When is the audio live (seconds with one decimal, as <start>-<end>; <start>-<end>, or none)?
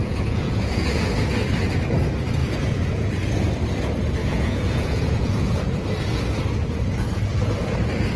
1.0-2.4; 3.3-4.2; 5.6-8.2